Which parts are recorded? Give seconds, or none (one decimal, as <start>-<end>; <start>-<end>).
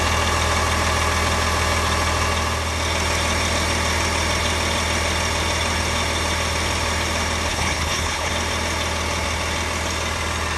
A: 0.0-7.5; 8.3-10.6